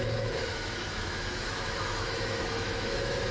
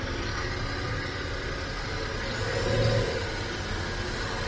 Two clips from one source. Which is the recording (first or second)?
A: second